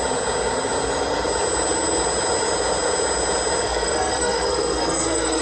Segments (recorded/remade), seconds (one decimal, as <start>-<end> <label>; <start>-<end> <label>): 0.0-3.6 recorded; 3.6-5.4 remade